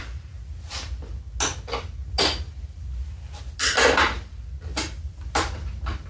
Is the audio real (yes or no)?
yes